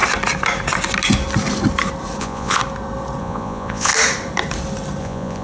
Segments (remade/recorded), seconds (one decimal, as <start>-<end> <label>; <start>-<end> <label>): 0.0-2.2 recorded; 2.2-2.6 remade; 2.6-3.2 recorded; 3.2-3.9 remade; 3.9-5.0 recorded; 5.0-5.4 remade